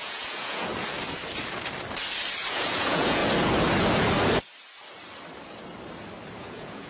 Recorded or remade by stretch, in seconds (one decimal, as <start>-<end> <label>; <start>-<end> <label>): 0.0-0.7 remade; 0.7-2.5 recorded; 2.5-3.2 remade; 3.2-6.4 recorded; 6.4-6.9 remade